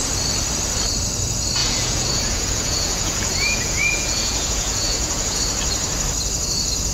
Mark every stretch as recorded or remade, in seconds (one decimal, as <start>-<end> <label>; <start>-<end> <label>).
0.0-1.6 recorded; 1.6-5.4 remade; 5.4-6.9 recorded